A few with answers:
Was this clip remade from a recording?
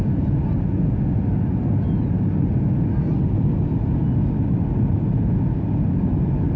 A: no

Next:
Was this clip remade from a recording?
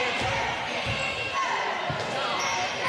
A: no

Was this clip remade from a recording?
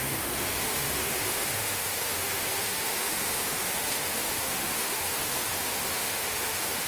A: yes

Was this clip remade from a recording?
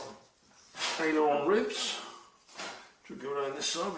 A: no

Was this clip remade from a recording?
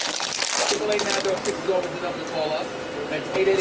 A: no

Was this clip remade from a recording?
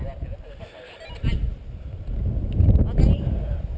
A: no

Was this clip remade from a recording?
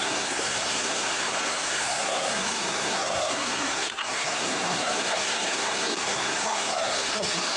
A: yes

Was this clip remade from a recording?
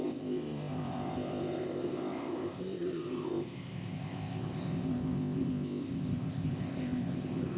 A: yes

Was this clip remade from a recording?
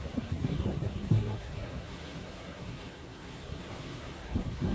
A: yes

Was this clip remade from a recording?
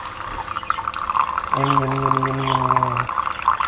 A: no